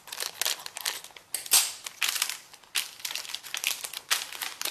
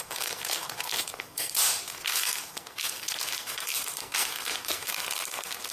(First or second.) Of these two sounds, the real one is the first